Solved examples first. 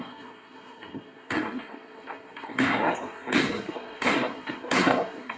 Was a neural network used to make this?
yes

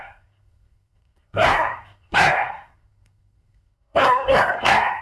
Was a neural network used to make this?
yes